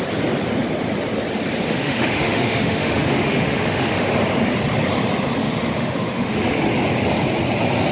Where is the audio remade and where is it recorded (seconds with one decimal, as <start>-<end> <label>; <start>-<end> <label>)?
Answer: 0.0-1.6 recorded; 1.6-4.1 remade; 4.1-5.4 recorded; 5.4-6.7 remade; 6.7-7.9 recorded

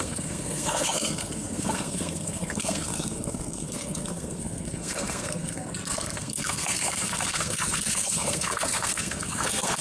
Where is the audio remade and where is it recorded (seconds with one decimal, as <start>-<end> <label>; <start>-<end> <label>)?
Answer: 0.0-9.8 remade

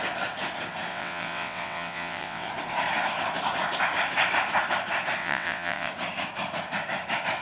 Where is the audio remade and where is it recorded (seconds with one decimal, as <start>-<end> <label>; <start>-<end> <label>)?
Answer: 0.0-0.9 recorded; 0.9-2.5 remade; 2.5-5.2 recorded; 5.2-5.9 remade; 5.9-7.4 recorded

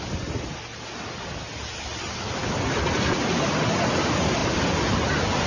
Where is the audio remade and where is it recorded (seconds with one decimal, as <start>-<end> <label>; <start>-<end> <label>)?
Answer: 0.0-5.5 recorded

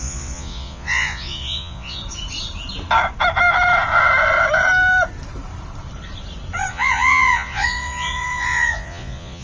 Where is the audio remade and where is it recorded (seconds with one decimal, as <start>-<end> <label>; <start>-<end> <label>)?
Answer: 0.0-2.0 remade; 2.0-6.7 recorded; 6.7-9.4 remade